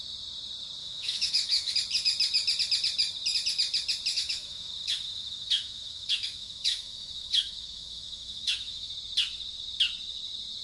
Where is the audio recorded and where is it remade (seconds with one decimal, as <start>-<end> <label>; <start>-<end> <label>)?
0.0-0.8 recorded; 0.8-1.7 remade; 1.7-4.1 recorded; 4.1-8.9 remade; 8.9-10.6 recorded